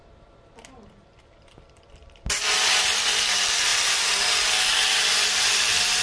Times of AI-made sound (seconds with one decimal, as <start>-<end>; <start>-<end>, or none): 0.0-3.7; 4.6-6.0